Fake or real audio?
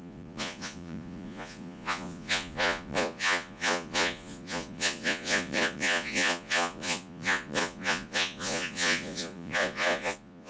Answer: fake